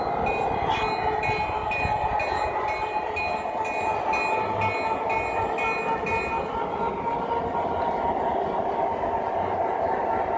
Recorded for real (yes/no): yes